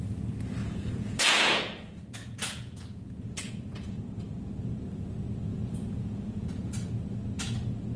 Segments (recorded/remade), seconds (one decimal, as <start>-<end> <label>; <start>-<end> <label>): 0.0-0.6 recorded; 0.6-4.0 remade; 4.0-5.5 recorded; 5.5-6.7 remade; 6.7-8.0 recorded